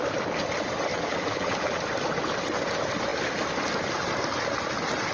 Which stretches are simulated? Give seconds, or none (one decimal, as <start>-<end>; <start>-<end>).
0.9-1.8